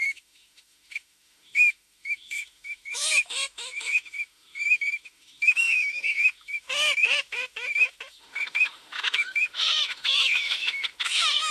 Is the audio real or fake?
fake